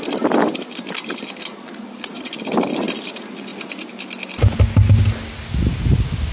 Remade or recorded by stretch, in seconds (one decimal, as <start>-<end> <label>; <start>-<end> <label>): 0.0-6.3 recorded